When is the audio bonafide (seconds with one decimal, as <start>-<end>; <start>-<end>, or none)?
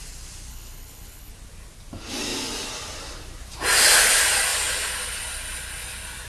0.0-0.5; 1.3-6.3